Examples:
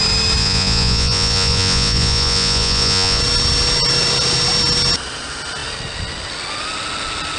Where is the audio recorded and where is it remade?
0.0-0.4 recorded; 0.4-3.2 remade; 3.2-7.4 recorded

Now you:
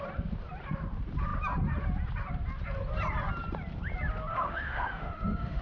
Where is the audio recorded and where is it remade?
0.0-4.3 recorded; 4.3-5.6 remade

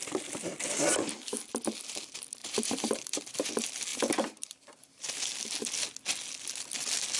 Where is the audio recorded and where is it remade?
0.0-2.4 recorded; 2.4-3.5 remade; 3.5-3.9 recorded; 3.9-5.2 remade; 5.2-7.2 recorded

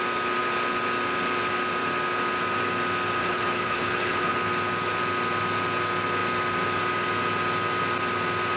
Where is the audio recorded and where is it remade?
0.0-3.2 recorded; 3.2-4.3 remade; 4.3-8.6 recorded

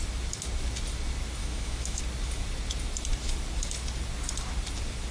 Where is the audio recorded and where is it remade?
0.0-1.4 recorded; 1.4-2.0 remade; 2.0-5.1 recorded

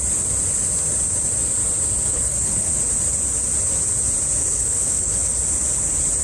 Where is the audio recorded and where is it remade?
0.0-2.1 recorded; 2.1-2.8 remade; 2.8-4.4 recorded; 4.4-5.4 remade; 5.4-6.2 recorded

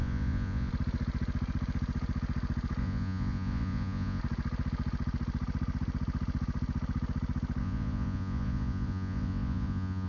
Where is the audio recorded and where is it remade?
0.0-0.7 remade; 0.7-2.8 recorded; 2.8-4.2 remade; 4.2-7.6 recorded; 7.6-10.1 remade